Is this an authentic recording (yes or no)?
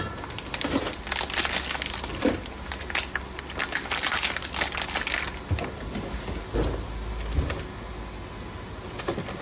yes